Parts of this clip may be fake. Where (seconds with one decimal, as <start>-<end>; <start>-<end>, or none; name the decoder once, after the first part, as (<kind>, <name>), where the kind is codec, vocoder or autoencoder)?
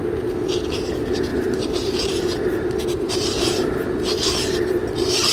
1.3-2.2 (vocoder, BigVGAN v2); 2.9-3.5